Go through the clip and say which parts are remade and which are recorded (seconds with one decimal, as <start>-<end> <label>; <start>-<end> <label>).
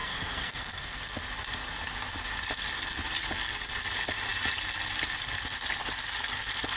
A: 0.0-1.0 remade; 1.0-6.8 recorded